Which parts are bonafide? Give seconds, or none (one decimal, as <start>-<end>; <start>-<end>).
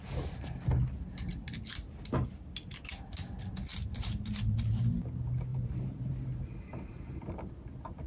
0.0-3.7; 4.9-5.5; 7.5-8.1